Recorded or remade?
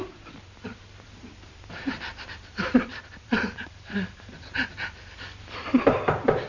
remade